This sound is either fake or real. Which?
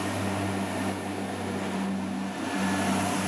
real